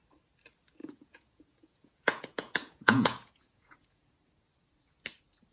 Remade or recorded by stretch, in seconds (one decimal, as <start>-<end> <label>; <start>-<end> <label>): 0.0-0.8 recorded; 0.8-4.1 remade; 4.1-5.5 recorded